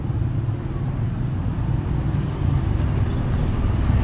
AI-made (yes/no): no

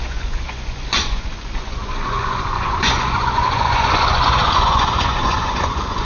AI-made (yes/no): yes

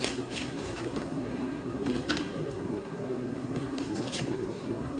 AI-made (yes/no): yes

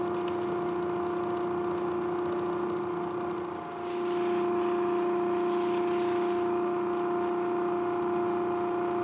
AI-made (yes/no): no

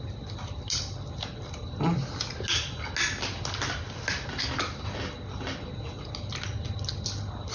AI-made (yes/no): no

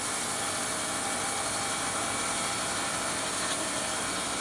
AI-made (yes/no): no